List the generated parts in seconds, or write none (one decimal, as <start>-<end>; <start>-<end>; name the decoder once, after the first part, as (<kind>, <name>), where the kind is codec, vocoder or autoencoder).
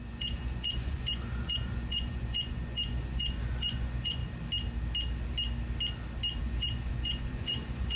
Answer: 0.0-4.2 (vocoder, Vocos); 6.4-8.0